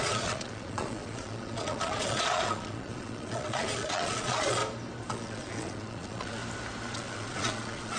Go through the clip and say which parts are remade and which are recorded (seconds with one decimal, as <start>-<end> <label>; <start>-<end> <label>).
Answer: 0.0-4.6 remade; 4.6-5.1 recorded; 5.1-6.4 remade; 6.4-6.9 recorded; 6.9-8.0 remade